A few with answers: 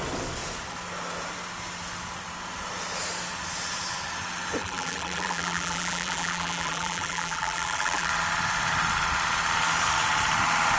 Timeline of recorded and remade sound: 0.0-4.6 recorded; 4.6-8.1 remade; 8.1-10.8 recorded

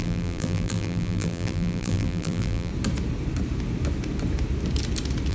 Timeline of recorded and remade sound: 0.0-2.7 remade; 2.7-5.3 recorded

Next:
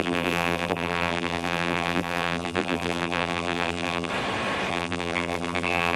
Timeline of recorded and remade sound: 0.0-4.1 remade; 4.1-4.7 recorded; 4.7-6.0 remade